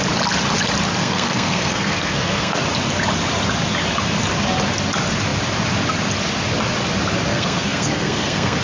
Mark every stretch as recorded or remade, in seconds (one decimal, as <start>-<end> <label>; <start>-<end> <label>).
0.0-1.0 recorded; 1.0-2.6 remade; 2.6-7.3 recorded; 7.3-8.6 remade